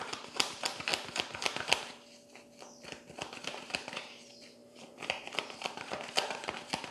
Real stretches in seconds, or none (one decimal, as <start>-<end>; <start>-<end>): 0.9-3.4